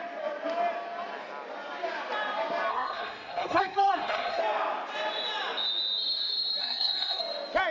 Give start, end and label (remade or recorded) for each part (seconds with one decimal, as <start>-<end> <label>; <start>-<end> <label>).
0.0-2.7 recorded; 2.7-4.4 remade; 4.4-6.6 recorded; 6.6-7.2 remade; 7.2-7.7 recorded